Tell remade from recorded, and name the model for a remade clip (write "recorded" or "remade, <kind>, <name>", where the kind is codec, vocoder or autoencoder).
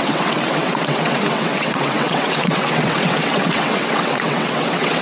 remade, vocoder, WaveNeXt